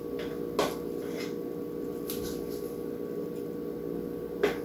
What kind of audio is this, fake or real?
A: real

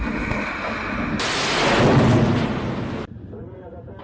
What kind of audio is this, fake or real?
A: real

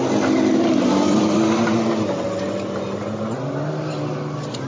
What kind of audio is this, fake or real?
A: real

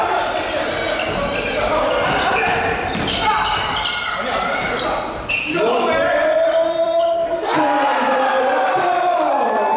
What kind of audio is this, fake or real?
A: fake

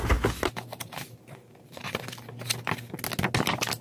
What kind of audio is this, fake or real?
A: real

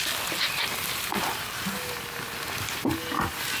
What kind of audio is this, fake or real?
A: real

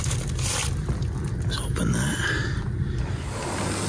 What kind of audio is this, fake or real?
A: real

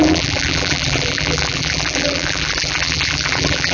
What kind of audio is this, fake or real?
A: fake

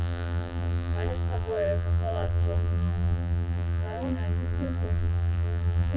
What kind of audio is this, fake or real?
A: fake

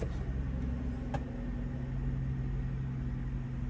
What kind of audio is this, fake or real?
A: real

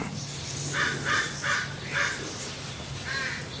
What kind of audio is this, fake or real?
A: real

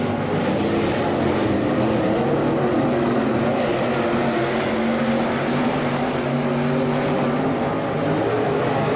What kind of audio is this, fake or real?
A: real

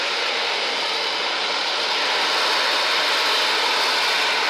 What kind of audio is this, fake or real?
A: real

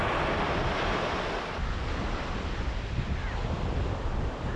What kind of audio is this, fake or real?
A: real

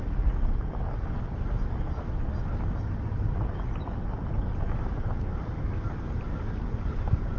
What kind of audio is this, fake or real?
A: real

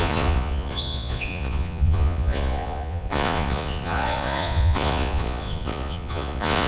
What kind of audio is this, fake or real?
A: fake